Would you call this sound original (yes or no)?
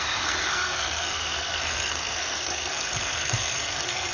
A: no